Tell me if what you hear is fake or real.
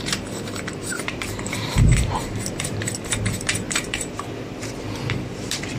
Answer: fake